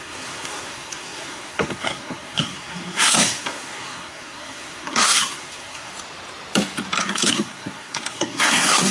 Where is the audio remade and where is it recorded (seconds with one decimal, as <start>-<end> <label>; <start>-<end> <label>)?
0.0-5.9 remade; 5.9-7.0 recorded; 7.0-8.9 remade